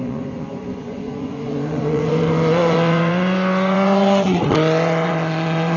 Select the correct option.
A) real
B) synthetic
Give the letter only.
B